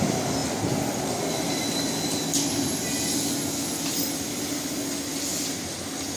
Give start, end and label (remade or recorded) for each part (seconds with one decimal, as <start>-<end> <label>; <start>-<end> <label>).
0.0-5.3 recorded; 5.3-5.8 remade; 5.8-6.2 recorded

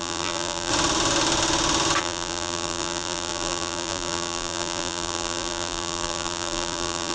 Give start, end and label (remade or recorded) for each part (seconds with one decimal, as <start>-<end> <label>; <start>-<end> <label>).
0.0-0.7 remade; 0.7-2.0 recorded; 2.0-7.1 remade

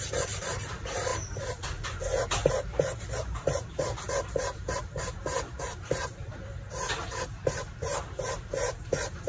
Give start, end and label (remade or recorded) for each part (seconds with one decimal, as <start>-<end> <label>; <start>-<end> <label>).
0.0-1.1 remade; 1.1-2.5 recorded; 2.5-9.3 remade

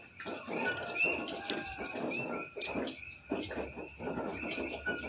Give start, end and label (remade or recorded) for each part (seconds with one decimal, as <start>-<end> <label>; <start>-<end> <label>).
0.0-5.1 recorded